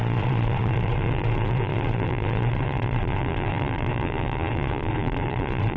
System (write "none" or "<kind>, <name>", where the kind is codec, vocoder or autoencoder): vocoder, Vocos